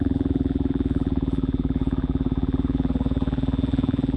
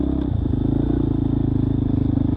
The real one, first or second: second